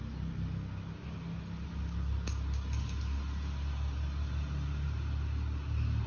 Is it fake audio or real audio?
real